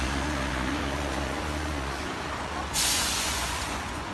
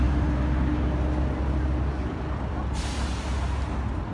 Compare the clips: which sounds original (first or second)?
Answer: second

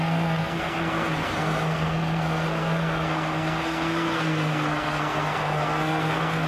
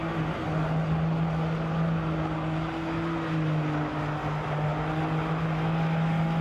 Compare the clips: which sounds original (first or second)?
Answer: second